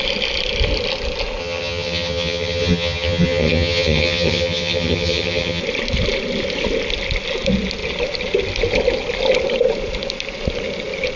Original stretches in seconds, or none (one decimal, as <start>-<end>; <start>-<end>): 0.0-1.4; 5.6-11.2